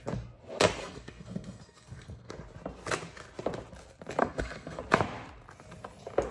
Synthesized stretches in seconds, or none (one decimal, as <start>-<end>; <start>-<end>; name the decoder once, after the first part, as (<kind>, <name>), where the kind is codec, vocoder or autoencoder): 0.8-2.3 (codec, SNAC); 4.2-4.8